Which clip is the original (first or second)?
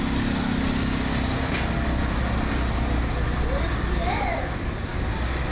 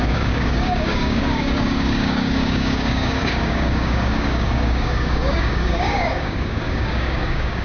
first